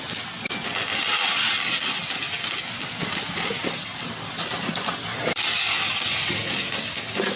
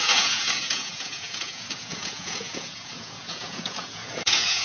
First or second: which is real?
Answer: first